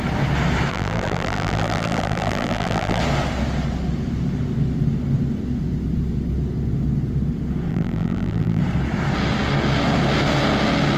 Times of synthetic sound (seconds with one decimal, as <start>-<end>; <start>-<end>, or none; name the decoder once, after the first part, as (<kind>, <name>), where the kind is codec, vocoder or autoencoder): 0.7-3.0 (vocoder, BigVGAN v2); 7.7-8.6